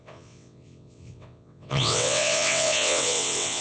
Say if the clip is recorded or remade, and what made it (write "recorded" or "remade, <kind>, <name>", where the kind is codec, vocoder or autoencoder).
remade, vocoder, WaveNeXt